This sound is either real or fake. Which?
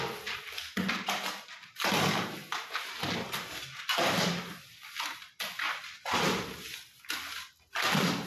real